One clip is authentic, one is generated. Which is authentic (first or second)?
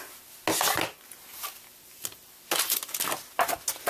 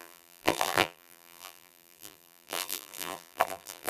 first